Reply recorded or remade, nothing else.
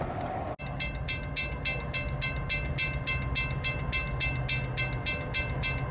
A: recorded